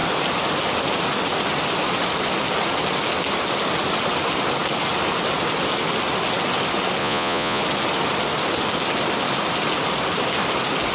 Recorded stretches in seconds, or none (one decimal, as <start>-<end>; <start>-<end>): 0.0-7.0; 7.6-10.9